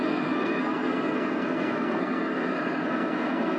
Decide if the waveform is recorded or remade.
remade